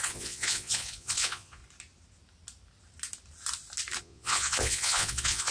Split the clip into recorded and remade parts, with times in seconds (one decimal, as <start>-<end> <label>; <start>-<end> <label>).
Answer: 0.0-1.6 remade; 1.6-4.0 recorded; 4.0-5.5 remade